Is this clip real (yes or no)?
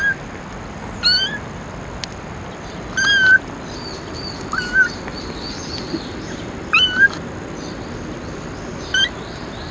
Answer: yes